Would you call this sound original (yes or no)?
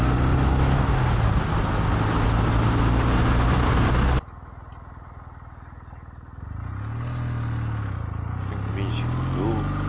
yes